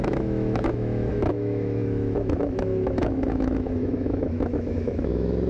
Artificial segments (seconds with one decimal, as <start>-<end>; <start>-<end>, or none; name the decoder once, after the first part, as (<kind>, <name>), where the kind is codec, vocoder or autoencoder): 0.0-5.5 (autoencoder, DAC-VAE)